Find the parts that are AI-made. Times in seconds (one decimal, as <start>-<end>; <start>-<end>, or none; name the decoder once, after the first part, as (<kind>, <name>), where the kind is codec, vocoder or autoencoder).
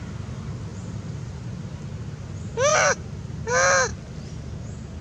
0.7-1.4 (vocoder, BigVGAN v2); 2.7-3.5